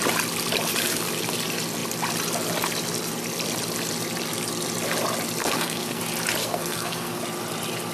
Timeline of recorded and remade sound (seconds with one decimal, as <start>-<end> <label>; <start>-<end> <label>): 0.0-5.4 recorded; 5.4-6.0 remade; 6.0-6.4 recorded; 6.4-7.2 remade; 7.2-7.9 recorded